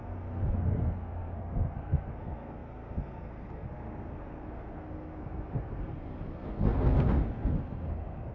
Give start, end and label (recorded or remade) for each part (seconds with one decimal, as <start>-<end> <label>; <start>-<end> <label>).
0.0-8.3 remade

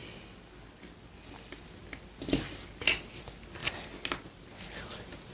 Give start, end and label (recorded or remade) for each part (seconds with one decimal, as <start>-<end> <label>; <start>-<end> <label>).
0.0-5.3 recorded

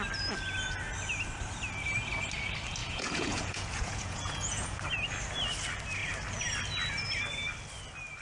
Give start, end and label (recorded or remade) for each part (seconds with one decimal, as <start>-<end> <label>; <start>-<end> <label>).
0.0-2.8 recorded; 2.8-4.8 remade; 4.8-8.2 recorded

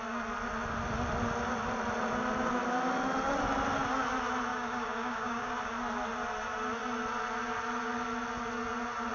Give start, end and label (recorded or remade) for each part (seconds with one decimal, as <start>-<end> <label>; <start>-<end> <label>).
0.0-4.5 recorded; 4.5-5.5 remade; 5.5-9.1 recorded

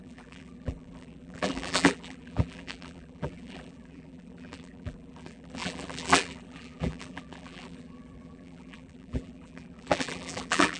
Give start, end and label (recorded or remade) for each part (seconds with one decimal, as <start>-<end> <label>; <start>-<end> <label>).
0.0-10.8 remade

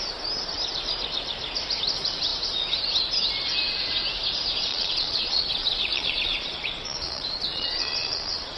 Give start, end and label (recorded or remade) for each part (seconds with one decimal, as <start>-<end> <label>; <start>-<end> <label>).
0.0-4.7 recorded; 4.7-8.6 remade